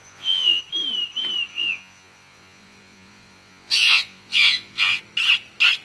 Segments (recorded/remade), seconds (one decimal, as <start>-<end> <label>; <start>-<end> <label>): 0.0-0.6 remade; 0.6-1.5 recorded; 1.5-5.0 remade; 5.0-5.8 recorded